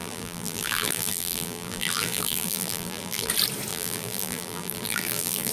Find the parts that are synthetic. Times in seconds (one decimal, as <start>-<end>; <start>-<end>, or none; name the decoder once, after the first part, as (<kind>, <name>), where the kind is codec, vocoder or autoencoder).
0.0-3.3 (vocoder, BigVGAN v2); 3.7-5.5